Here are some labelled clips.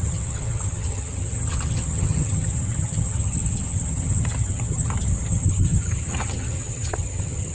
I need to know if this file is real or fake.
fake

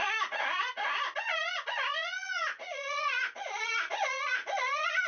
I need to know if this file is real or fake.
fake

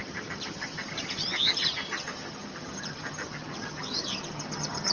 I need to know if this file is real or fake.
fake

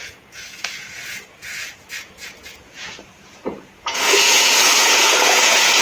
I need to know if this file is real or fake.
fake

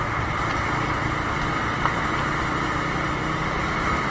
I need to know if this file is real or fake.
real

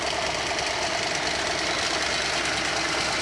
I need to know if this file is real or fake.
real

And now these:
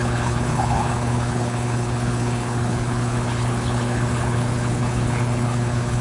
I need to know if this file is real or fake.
fake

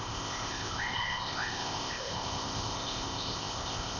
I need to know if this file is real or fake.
fake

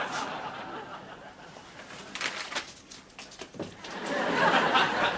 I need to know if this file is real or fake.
real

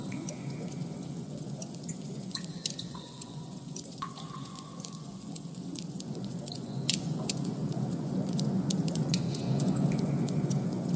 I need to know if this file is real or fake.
fake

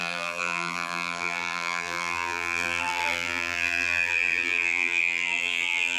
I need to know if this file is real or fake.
fake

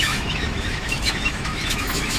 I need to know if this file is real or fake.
fake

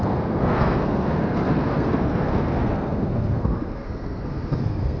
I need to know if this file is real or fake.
fake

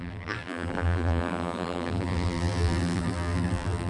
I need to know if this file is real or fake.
fake